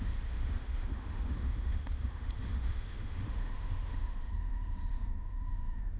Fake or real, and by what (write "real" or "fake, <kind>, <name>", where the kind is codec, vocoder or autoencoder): fake, autoencoder, DAC-VAE